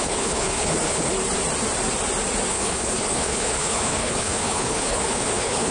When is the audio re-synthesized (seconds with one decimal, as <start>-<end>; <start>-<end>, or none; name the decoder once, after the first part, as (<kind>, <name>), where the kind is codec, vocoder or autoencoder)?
0.0-1.1 (codec, HILCodec); 2.5-5.7